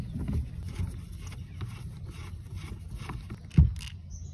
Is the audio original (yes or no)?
yes